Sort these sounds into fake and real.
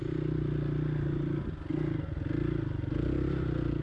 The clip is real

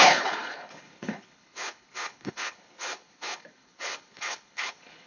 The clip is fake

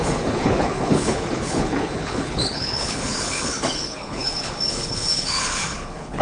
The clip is fake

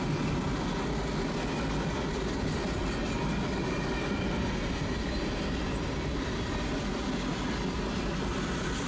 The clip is real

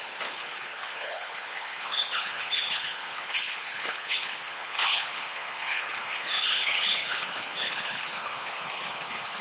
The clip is fake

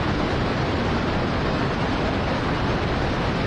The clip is real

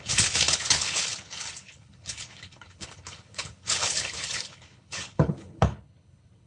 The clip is fake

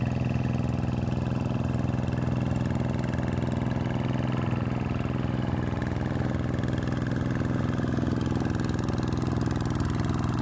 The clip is real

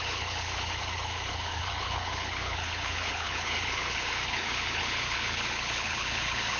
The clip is fake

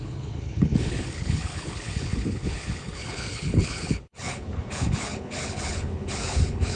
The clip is fake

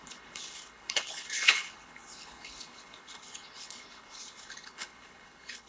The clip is fake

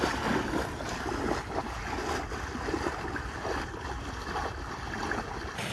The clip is real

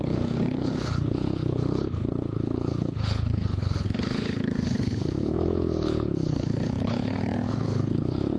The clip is fake